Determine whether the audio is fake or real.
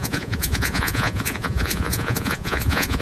fake